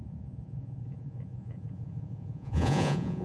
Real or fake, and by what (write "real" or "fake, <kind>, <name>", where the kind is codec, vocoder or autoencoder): fake, vocoder, Vocos